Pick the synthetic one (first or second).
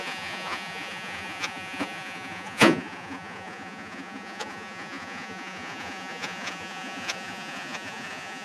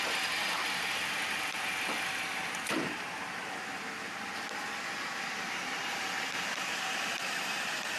first